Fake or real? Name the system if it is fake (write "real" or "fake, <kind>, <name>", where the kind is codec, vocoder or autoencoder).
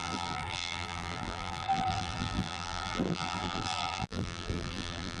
fake, vocoder, BigVGAN v2